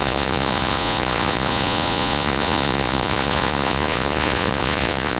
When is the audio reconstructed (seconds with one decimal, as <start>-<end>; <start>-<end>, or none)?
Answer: 0.0-5.2